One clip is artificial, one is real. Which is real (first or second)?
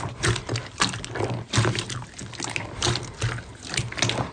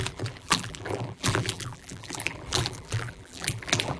first